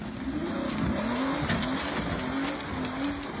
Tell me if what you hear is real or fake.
real